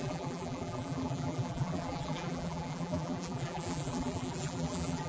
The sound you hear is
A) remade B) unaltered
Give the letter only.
A